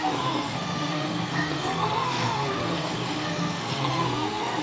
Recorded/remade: remade